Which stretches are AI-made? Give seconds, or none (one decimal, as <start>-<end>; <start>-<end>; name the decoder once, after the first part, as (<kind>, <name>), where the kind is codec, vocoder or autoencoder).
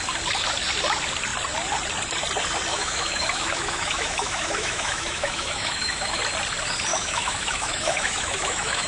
2.7-6.2 (autoencoder, DAC-VAE); 6.9-8.9